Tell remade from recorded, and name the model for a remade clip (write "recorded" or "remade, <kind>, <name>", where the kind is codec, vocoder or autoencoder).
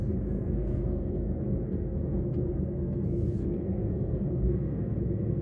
remade, codec, SNAC